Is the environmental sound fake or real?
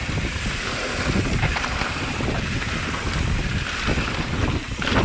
real